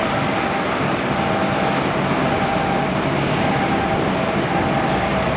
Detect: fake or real real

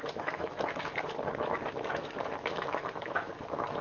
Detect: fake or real fake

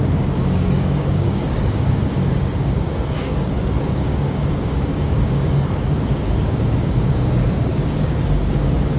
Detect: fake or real fake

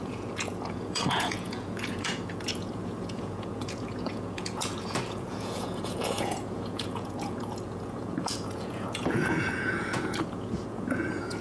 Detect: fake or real fake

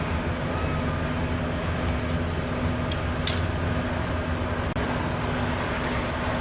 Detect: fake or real real